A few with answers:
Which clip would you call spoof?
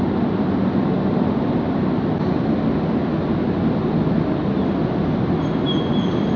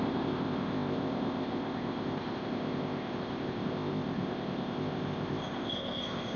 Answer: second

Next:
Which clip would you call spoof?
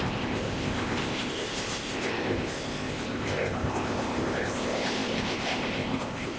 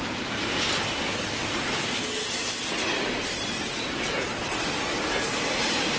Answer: first